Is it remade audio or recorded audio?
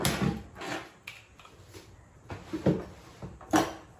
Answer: recorded